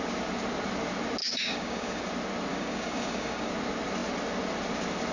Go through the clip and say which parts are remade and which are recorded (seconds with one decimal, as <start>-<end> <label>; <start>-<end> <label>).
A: 0.0-1.2 recorded; 1.2-2.0 remade; 2.0-2.5 recorded; 2.5-3.5 remade; 3.5-5.1 recorded